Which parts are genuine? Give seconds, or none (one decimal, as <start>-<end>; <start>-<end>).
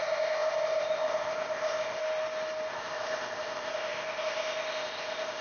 2.0-2.7